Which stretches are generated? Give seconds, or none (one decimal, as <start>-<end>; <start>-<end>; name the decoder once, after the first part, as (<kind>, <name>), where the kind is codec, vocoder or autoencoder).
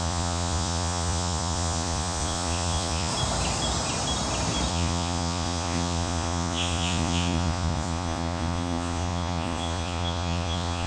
0.0-3.1 (vocoder, Vocos); 4.7-10.9